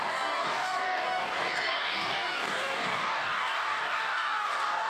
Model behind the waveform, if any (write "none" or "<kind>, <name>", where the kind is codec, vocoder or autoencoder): codec, DAC